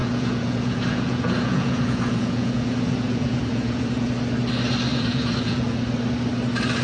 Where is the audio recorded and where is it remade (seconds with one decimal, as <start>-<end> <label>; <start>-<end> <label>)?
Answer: 0.0-4.1 remade; 4.1-4.9 recorded; 4.9-5.8 remade; 5.8-6.8 recorded